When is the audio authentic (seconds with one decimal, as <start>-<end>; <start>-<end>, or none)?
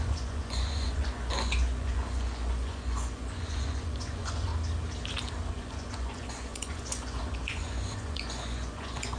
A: 4.5-5.5